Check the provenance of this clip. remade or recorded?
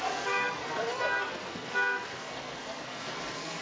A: remade